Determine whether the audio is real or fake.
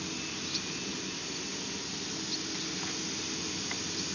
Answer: real